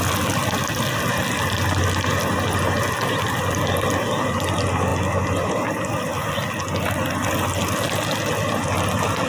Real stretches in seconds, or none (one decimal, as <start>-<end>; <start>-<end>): 0.0-9.3